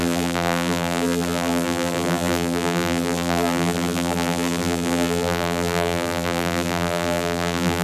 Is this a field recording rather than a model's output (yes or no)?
no